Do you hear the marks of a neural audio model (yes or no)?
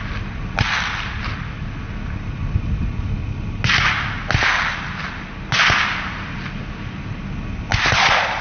no